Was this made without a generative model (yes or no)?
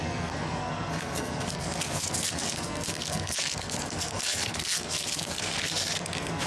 no